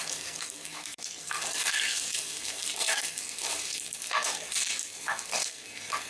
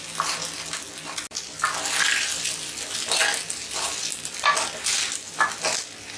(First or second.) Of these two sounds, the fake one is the first